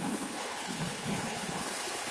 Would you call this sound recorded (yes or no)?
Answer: no